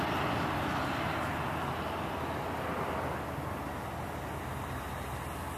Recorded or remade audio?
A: recorded